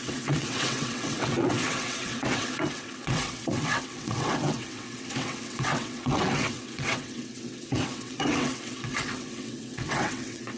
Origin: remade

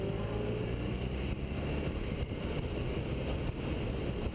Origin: recorded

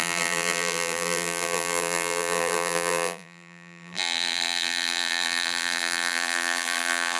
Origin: remade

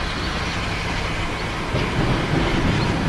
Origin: recorded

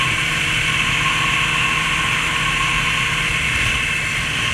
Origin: recorded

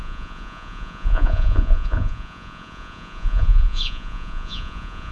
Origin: remade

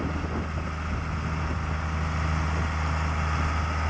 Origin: recorded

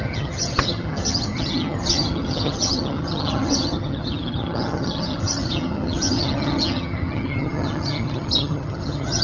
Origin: remade